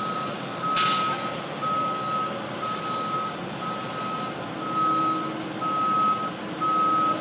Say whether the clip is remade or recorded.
recorded